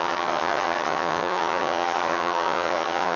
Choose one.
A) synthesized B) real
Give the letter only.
A